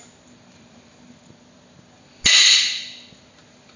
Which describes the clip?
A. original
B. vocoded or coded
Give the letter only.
A